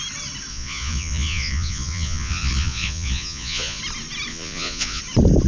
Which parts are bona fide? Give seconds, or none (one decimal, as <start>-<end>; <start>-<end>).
0.0-0.5; 3.8-4.3; 5.0-5.5